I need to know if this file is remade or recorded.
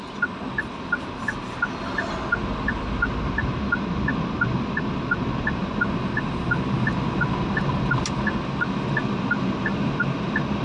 recorded